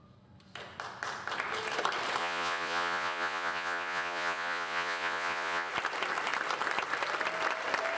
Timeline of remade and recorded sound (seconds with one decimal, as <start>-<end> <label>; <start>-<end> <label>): 0.0-2.2 recorded; 2.2-5.7 remade; 5.7-8.0 recorded